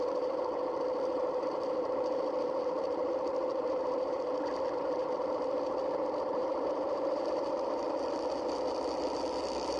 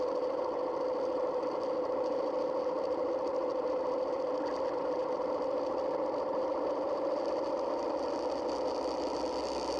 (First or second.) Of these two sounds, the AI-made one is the first